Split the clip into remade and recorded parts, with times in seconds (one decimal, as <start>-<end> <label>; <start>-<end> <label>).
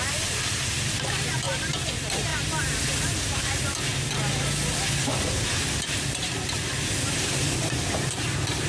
0.0-2.3 remade; 2.3-7.1 recorded; 7.1-8.7 remade